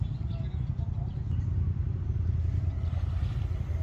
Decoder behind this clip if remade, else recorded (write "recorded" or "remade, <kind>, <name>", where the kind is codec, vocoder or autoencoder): recorded